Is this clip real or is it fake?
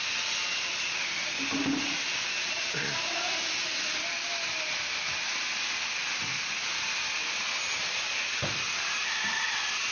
real